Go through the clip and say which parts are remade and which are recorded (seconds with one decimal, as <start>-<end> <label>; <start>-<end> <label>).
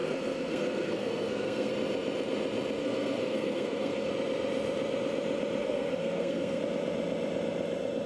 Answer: 0.0-1.7 remade; 1.7-2.8 recorded; 2.8-4.1 remade; 4.1-5.6 recorded; 5.6-6.6 remade; 6.6-8.1 recorded